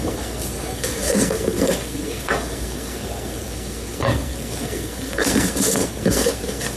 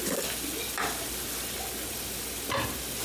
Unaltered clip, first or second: second